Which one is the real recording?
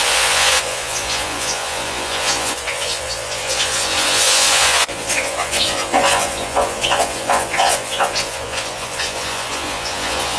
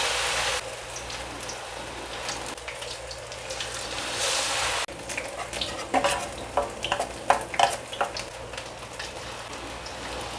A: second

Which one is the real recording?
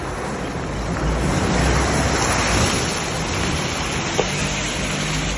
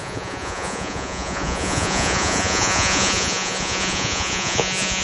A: first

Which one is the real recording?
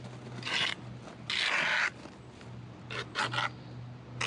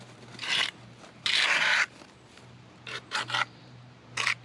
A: first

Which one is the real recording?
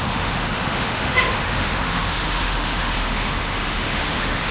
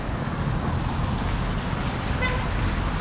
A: second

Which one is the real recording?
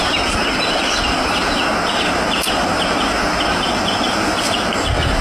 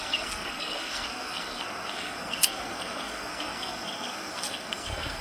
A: first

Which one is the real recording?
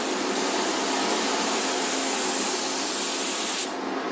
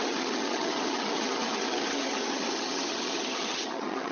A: first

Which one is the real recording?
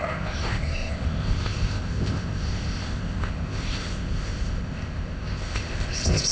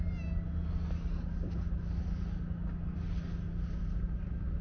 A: second